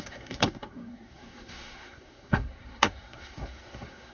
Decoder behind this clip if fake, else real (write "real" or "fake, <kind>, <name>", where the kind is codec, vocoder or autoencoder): fake, codec, SNAC